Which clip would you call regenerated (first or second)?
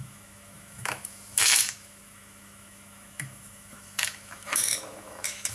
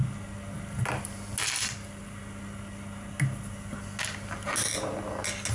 first